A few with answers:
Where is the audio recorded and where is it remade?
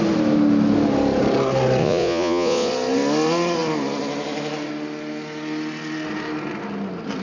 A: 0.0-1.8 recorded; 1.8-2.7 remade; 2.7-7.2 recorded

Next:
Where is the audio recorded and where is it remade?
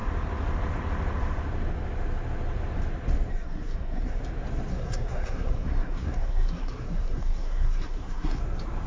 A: 0.0-3.3 recorded; 3.3-4.2 remade; 4.2-4.7 recorded; 4.7-8.4 remade; 8.4-8.9 recorded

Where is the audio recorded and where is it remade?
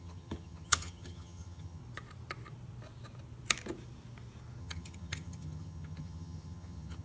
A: 0.0-1.8 remade; 1.8-4.6 recorded; 4.6-7.0 remade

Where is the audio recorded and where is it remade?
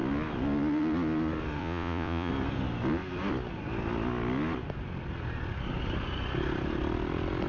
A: 0.0-1.6 recorded; 1.6-2.3 remade; 2.3-7.5 recorded